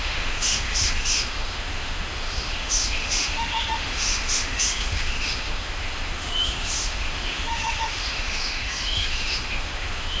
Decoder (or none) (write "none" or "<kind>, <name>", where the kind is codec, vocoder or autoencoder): autoencoder, DAC-VAE